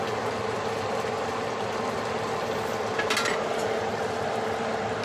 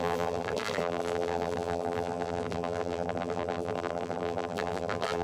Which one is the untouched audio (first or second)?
first